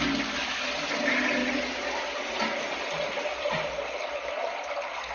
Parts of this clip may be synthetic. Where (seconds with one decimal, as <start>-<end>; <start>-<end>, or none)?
3.3-4.3

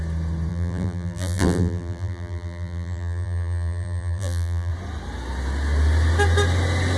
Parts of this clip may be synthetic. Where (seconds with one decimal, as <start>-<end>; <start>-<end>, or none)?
0.5-4.7

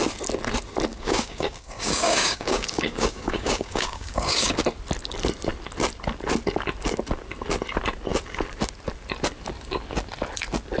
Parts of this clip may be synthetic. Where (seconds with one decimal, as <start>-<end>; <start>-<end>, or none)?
0.9-4.6

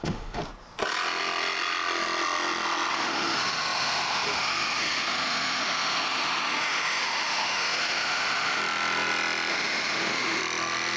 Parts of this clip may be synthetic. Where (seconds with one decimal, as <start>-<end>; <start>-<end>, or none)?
0.0-0.4; 2.9-8.6; 9.5-10.4

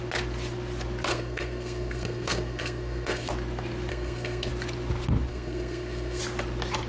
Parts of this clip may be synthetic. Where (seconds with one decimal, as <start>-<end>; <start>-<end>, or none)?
1.1-3.3; 3.9-4.5; 5.3-6.2

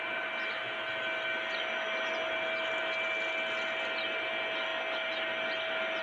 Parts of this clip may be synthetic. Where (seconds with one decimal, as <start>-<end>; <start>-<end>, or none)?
none